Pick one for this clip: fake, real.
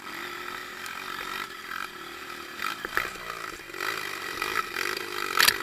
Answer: real